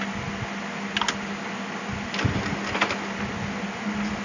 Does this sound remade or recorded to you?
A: recorded